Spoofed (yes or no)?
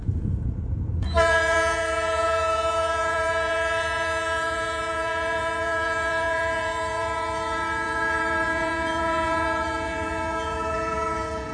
yes